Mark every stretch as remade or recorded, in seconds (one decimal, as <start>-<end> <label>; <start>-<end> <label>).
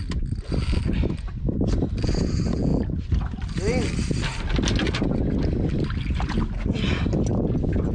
0.0-7.9 recorded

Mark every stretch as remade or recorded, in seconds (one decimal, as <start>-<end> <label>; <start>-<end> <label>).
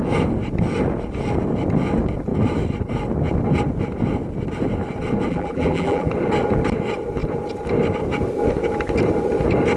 0.0-5.3 recorded; 5.3-6.1 remade; 6.1-9.8 recorded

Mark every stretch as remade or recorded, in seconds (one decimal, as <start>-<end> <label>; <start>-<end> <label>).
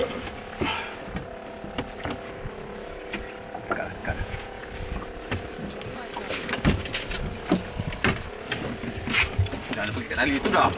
0.0-4.0 recorded; 4.0-4.6 remade; 4.6-10.8 recorded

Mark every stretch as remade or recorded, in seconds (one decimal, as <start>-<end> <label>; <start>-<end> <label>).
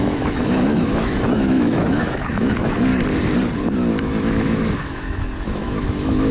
0.0-2.9 remade; 2.9-3.9 recorded; 3.9-6.3 remade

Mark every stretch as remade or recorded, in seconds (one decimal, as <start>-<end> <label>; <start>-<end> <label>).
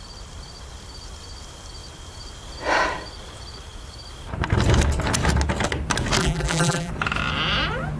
0.0-6.2 recorded; 6.2-6.9 remade; 6.9-8.0 recorded